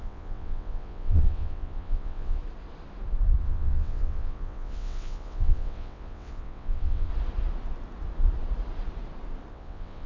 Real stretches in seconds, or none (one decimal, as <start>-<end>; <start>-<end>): 2.4-3.4; 7.1-9.5